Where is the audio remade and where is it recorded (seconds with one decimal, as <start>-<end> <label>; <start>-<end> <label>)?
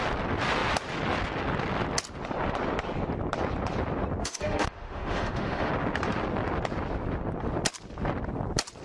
0.0-4.2 recorded; 4.2-5.7 remade; 5.7-8.8 recorded